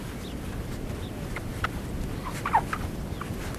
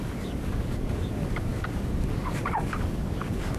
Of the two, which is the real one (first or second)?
first